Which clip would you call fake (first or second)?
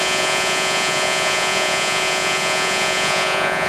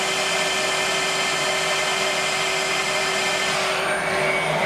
first